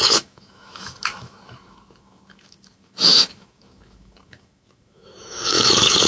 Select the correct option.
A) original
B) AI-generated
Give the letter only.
B